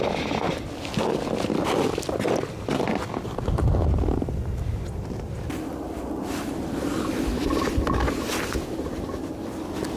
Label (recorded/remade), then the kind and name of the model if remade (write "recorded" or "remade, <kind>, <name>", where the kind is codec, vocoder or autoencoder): recorded